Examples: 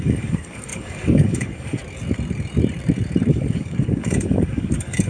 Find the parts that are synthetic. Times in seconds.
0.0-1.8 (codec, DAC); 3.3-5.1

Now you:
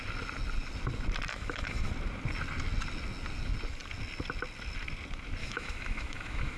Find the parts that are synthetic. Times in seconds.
1.3-1.9 (autoencoder, DAC-VAE); 5.4-6.6

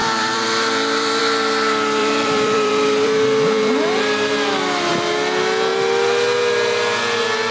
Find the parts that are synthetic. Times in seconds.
0.0-1.2 (vocoder, BigVGAN v2); 2.0-4.0

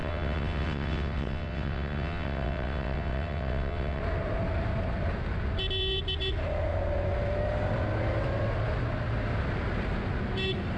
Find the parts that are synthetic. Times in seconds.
0.0-4.0 (vocoder, WaveNeXt)

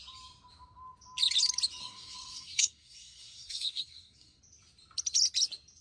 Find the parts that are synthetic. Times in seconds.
1.8-4.4 (codec, SNAC)

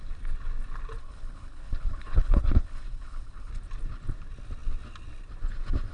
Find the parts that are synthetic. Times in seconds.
1.0-3.5 (codec, HILCodec)

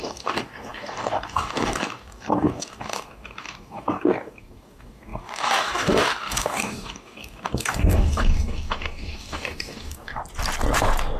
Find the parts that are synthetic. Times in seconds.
0.0-10.2 (codec, DAC)

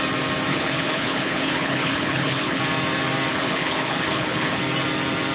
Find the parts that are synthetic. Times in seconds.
0.5-2.6 (codec, HILCodec); 3.3-4.6